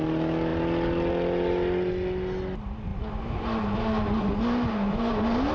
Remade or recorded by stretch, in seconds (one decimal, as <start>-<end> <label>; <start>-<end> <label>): 0.0-5.5 recorded